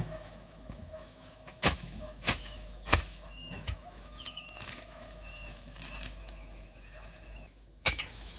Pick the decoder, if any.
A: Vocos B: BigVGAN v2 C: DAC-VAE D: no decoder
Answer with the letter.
C